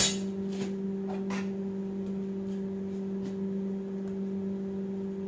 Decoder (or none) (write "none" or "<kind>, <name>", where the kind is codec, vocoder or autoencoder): none